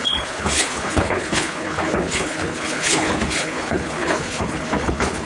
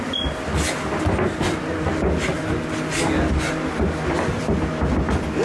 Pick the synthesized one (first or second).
first